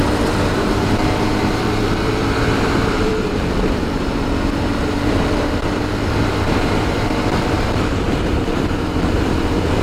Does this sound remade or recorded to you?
remade